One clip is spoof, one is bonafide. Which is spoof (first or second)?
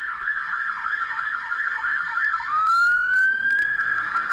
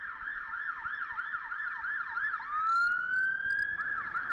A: first